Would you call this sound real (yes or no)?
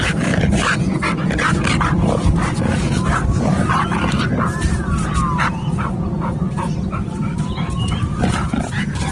yes